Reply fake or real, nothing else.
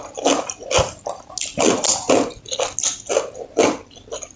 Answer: real